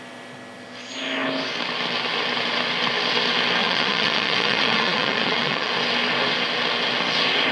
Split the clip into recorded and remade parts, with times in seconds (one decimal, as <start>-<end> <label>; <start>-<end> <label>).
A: 0.0-3.6 recorded; 3.6-5.7 remade; 5.7-7.5 recorded

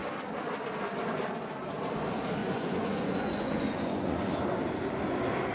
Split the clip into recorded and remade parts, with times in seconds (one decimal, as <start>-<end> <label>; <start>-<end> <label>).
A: 0.0-2.4 recorded; 2.4-4.3 remade; 4.3-5.5 recorded

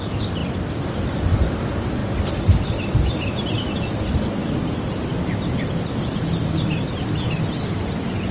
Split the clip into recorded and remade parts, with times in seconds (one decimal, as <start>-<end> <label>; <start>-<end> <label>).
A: 0.0-8.3 recorded

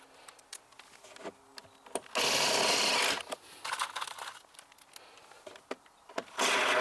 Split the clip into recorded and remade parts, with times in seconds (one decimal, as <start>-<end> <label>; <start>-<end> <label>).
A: 0.0-6.8 recorded

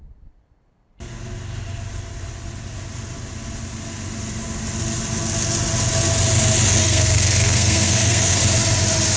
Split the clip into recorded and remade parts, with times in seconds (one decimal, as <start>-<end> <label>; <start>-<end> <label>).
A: 0.0-6.8 recorded; 6.8-8.4 remade; 8.4-9.2 recorded

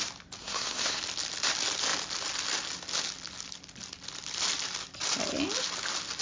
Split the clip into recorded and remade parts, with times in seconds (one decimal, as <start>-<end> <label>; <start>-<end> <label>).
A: 0.0-0.4 recorded; 0.4-1.0 remade; 1.0-6.2 recorded

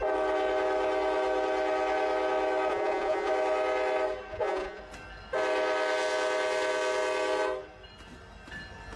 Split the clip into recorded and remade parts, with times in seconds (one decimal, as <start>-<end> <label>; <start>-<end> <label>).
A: 0.0-2.7 recorded; 2.7-3.3 remade; 3.3-4.3 recorded; 4.3-4.8 remade; 4.8-9.0 recorded

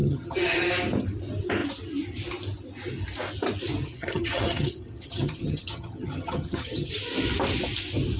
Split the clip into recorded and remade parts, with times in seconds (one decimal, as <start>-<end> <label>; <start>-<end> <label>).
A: 0.0-0.7 remade; 0.7-3.8 recorded; 3.8-6.9 remade; 6.9-8.2 recorded